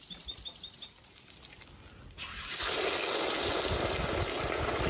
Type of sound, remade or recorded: recorded